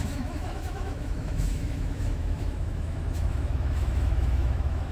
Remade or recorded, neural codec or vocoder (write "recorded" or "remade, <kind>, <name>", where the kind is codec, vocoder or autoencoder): remade, autoencoder, DAC-VAE